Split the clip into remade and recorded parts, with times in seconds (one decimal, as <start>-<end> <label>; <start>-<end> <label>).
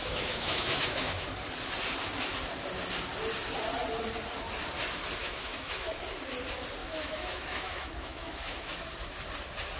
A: 0.0-1.3 remade; 1.3-5.2 recorded; 5.2-5.9 remade; 5.9-6.8 recorded; 6.8-8.7 remade; 8.7-9.8 recorded